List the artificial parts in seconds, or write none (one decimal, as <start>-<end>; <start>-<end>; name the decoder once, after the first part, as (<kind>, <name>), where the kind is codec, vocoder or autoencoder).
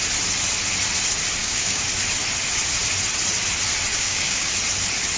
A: 1.4-1.9 (codec, DAC); 3.9-4.5